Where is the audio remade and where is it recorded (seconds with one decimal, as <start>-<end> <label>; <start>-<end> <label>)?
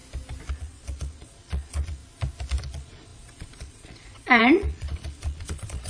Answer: 0.0-0.5 recorded; 0.5-2.0 remade; 2.0-2.6 recorded; 2.6-5.9 remade